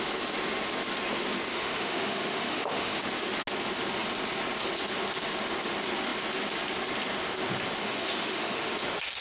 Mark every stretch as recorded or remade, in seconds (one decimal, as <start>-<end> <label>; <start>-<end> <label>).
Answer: 0.0-1.5 recorded; 1.5-3.0 remade; 3.0-7.8 recorded; 7.8-8.7 remade; 8.7-9.2 recorded